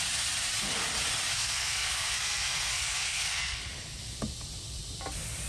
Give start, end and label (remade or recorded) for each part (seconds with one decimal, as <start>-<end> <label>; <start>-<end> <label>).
0.0-1.3 recorded; 1.3-3.6 remade; 3.6-5.5 recorded